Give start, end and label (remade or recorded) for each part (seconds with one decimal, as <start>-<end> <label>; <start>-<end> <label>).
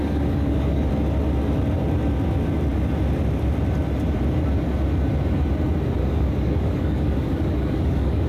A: 0.0-0.9 remade; 0.9-6.0 recorded; 6.0-8.3 remade